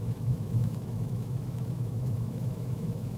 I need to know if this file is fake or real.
fake